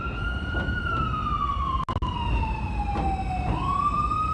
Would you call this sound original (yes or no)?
yes